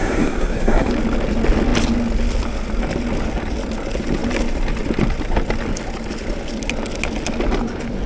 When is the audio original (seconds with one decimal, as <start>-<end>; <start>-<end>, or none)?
0.9-8.1